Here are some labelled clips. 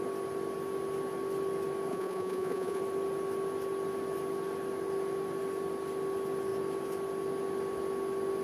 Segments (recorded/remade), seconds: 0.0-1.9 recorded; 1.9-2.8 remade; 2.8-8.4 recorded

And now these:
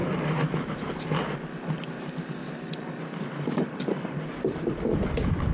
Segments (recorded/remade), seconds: 0.0-2.4 recorded; 2.4-5.5 remade

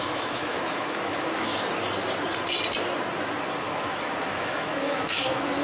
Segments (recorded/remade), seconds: 0.0-1.5 remade; 1.5-3.6 recorded; 3.6-5.6 remade

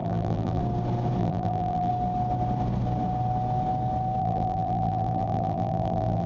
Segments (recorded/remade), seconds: 0.0-0.6 remade; 0.6-1.2 recorded; 1.2-1.9 remade; 1.9-4.2 recorded; 4.2-6.3 remade

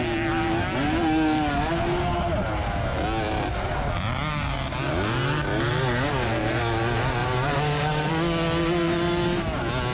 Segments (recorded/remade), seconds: 0.0-7.2 recorded; 7.2-8.1 remade; 8.1-9.9 recorded

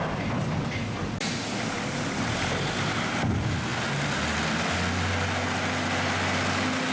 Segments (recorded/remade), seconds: 0.0-6.9 recorded